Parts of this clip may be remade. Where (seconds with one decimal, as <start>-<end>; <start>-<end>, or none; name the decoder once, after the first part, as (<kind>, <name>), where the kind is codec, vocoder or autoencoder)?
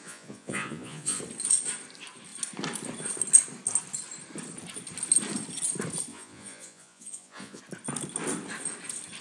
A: 0.0-1.2 (vocoder, Vocos); 6.1-7.6